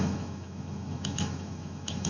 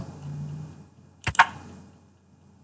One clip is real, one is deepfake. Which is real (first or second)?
second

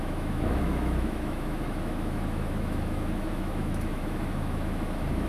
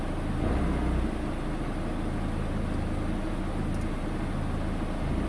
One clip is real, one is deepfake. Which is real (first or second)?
second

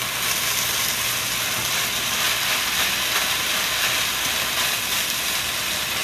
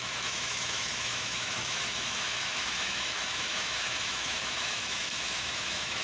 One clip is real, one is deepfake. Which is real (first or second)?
first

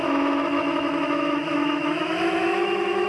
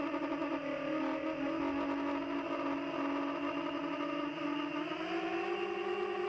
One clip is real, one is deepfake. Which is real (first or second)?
second